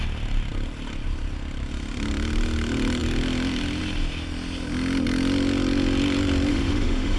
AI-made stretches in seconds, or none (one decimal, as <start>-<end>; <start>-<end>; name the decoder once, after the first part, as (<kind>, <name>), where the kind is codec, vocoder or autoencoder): 6.5-7.2 (autoencoder, DAC-VAE)